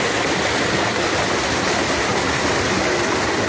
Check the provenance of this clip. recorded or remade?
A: recorded